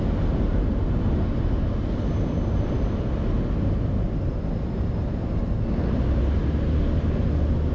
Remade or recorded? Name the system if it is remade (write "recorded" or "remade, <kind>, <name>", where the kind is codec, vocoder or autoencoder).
recorded